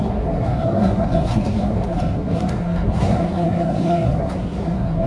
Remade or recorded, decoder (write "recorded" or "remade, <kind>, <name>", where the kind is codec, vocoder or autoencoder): remade, codec, SNAC